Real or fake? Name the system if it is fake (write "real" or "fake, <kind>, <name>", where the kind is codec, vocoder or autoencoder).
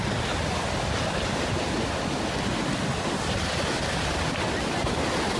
real